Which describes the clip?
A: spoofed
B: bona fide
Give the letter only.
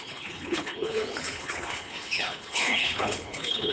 A